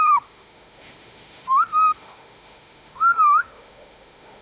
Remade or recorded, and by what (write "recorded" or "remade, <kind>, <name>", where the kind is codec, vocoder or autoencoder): remade, autoencoder, DAC-VAE